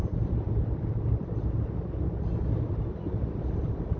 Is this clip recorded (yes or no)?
yes